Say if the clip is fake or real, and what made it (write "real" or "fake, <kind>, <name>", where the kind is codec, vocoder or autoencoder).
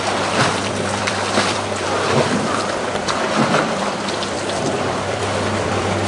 fake, vocoder, BigVGAN v2